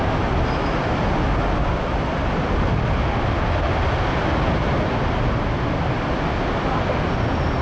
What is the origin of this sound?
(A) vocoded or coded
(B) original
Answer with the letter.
B